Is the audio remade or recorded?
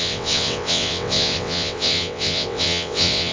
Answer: remade